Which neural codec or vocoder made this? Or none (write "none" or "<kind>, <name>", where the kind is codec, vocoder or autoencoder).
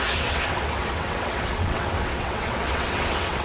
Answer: vocoder, WaveNeXt